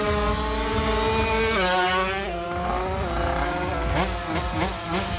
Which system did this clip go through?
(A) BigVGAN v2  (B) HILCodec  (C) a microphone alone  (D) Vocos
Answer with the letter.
C